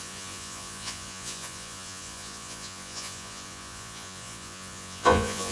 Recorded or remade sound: remade